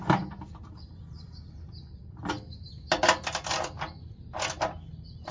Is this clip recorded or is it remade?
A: recorded